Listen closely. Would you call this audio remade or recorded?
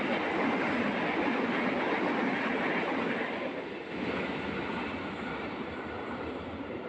recorded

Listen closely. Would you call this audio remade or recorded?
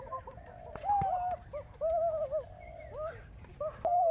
recorded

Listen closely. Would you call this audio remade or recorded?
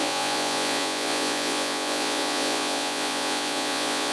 remade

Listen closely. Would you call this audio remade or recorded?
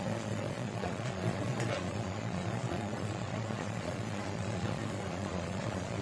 remade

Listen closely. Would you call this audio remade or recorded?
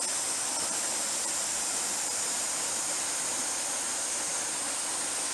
recorded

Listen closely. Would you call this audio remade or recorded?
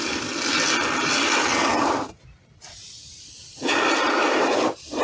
recorded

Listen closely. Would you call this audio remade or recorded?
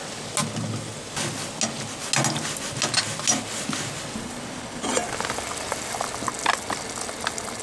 recorded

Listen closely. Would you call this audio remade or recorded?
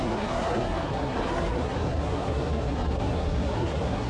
remade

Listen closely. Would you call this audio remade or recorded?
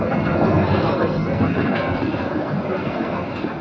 remade